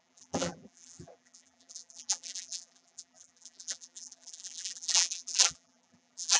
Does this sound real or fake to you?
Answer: fake